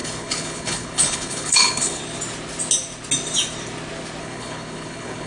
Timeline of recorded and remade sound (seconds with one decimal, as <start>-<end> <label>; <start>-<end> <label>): 0.0-2.0 remade; 2.0-4.2 recorded; 4.2-5.3 remade